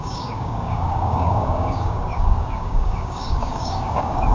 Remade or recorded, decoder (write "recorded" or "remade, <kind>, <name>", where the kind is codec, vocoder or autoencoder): remade, codec, DAC